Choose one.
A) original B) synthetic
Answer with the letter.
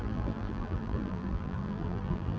B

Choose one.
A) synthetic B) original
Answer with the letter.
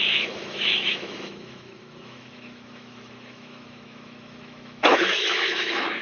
A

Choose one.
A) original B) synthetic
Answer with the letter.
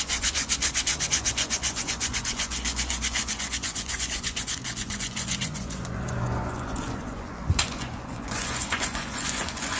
B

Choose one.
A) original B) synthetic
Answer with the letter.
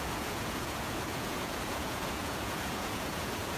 B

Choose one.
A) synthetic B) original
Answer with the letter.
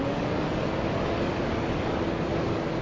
A